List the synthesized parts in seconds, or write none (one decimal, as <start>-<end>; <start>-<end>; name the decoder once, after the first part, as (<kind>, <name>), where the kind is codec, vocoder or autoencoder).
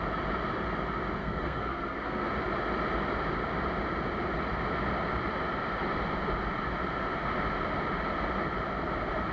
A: 1.2-2.3 (codec, SNAC)